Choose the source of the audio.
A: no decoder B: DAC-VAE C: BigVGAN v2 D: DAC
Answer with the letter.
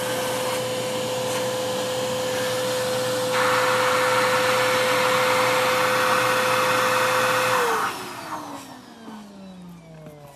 A